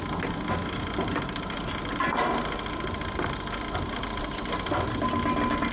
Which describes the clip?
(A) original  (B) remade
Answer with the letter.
A